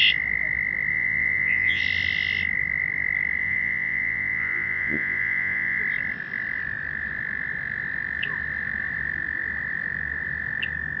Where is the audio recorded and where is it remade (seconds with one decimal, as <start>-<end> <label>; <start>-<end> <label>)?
0.0-0.9 recorded; 0.9-1.8 remade; 1.8-3.4 recorded; 3.4-5.8 remade; 5.8-11.0 recorded